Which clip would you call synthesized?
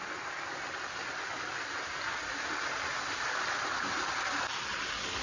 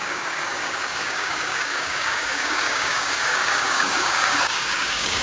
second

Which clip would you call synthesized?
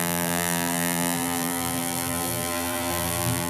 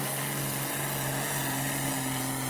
first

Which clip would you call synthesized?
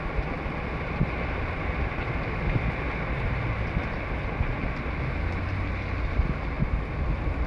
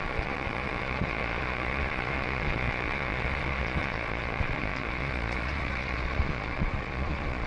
second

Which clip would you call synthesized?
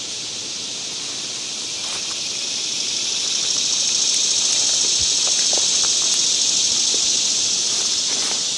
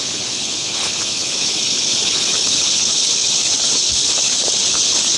second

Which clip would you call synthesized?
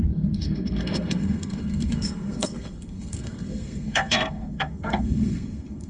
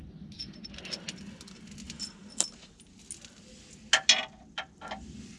first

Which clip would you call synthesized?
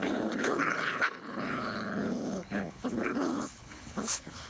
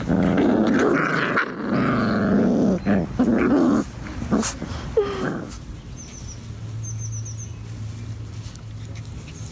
first